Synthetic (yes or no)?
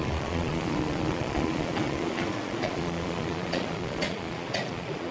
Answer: yes